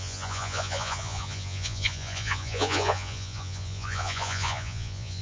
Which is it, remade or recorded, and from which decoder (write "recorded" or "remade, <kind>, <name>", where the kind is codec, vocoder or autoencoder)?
remade, vocoder, Vocos